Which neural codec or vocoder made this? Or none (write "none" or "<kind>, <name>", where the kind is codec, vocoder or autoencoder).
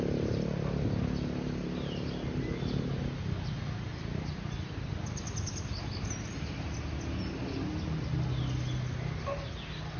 none